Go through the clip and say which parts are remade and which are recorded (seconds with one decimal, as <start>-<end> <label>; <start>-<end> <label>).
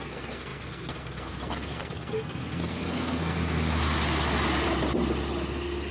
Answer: 0.0-3.4 remade; 3.4-5.9 recorded